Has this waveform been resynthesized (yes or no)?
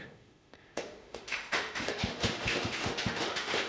yes